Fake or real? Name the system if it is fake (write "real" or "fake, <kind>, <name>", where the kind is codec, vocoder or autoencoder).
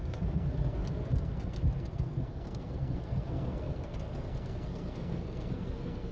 fake, codec, SNAC